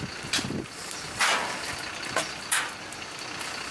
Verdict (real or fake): real